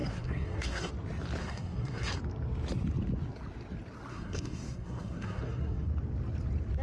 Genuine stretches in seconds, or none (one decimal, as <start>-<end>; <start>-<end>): 0.9-1.4; 2.2-4.1; 5.9-6.8